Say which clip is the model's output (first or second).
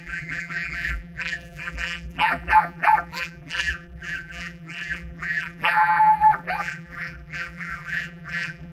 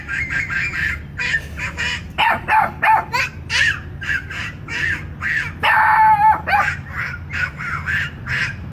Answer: first